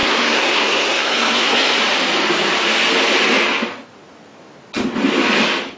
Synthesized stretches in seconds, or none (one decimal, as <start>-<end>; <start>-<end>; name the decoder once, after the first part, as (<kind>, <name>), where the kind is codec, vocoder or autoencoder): 0.0-1.8 (codec, SNAC)